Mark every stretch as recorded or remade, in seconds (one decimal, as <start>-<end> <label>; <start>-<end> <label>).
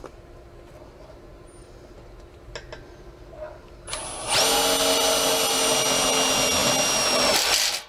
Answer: 0.0-7.9 recorded